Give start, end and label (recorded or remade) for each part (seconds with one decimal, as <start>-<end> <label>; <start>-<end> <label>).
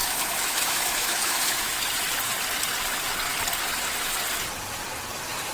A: 0.0-1.9 remade; 1.9-5.5 recorded